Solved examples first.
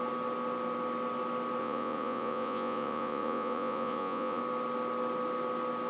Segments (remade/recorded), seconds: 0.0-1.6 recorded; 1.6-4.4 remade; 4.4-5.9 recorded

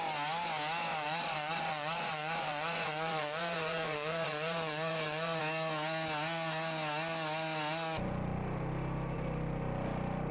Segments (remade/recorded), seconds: 0.0-0.9 recorded; 0.9-5.4 remade; 5.4-10.3 recorded

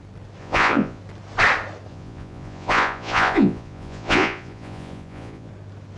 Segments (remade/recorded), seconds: 0.0-0.4 recorded; 0.4-1.0 remade; 1.0-1.9 recorded; 1.9-5.5 remade; 5.5-6.0 recorded

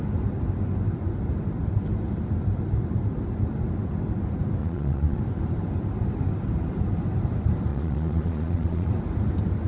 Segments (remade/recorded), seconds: 0.0-4.6 recorded; 4.6-5.2 remade; 5.2-7.7 recorded; 7.7-8.9 remade; 8.9-9.7 recorded

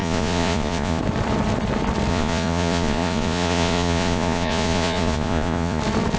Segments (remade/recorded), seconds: 0.0-1.0 remade; 1.0-2.1 recorded; 2.1-5.8 remade; 5.8-6.2 recorded

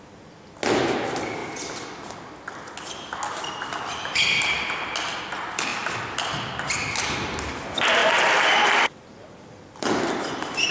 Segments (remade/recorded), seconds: 0.0-10.7 recorded

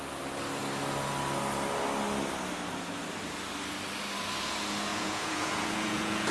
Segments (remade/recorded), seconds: 0.0-4.9 recorded; 4.9-6.3 remade

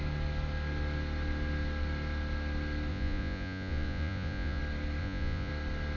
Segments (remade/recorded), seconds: 0.0-2.9 recorded; 2.9-4.6 remade; 4.6-5.0 recorded; 5.0-5.5 remade; 5.5-6.0 recorded